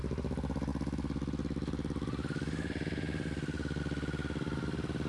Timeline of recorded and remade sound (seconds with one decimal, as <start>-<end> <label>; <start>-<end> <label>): 0.0-5.1 recorded